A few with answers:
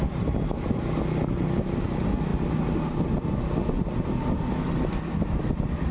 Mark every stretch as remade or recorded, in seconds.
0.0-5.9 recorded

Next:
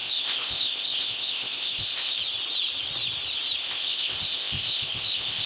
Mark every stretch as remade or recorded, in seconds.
0.0-2.2 remade; 2.2-3.6 recorded; 3.6-5.5 remade

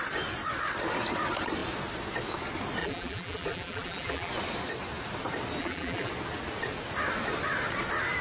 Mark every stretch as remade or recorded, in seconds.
0.0-2.8 recorded; 2.8-4.3 remade; 4.3-5.6 recorded; 5.6-6.1 remade; 6.1-8.2 recorded